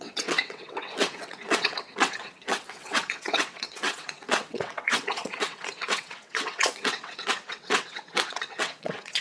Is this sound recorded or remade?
remade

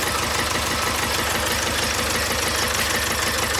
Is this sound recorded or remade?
recorded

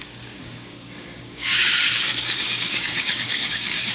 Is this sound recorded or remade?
remade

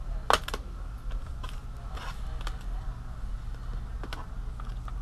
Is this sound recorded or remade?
recorded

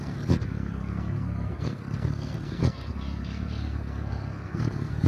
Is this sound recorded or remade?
remade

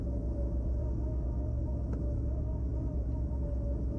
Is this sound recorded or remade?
recorded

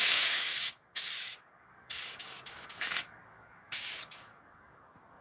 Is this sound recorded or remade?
remade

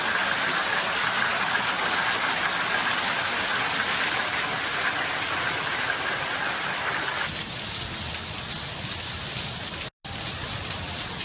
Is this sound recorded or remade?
recorded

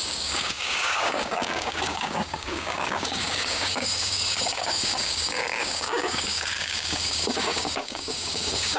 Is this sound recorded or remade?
remade